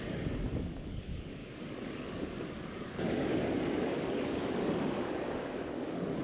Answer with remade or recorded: remade